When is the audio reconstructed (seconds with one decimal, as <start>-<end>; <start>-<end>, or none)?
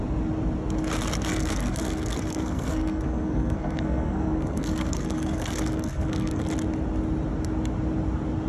1.3-6.4